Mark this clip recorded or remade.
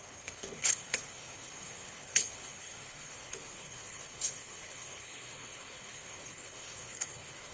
remade